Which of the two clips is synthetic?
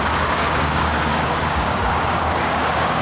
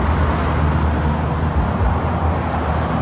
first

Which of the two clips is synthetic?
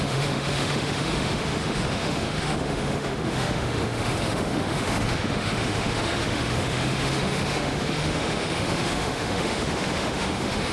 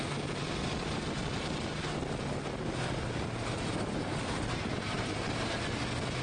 first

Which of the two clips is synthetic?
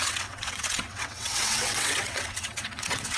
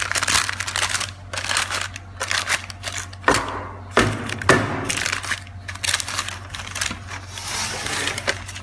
first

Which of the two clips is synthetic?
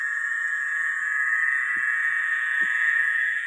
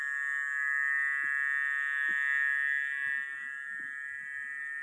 first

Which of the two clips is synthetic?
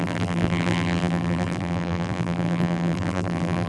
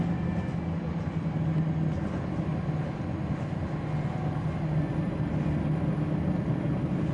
first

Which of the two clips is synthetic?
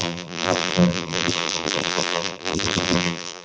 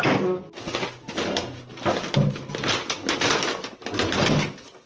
first